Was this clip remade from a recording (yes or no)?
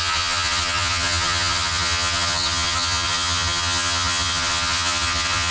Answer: yes